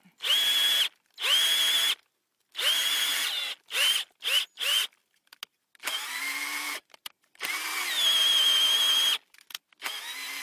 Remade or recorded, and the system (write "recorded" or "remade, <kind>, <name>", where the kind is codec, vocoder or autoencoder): recorded